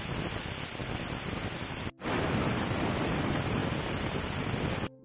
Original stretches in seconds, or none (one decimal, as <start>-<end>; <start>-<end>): 0.0-5.0